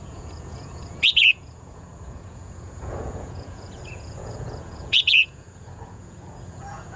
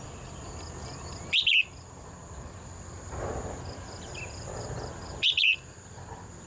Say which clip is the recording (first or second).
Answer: second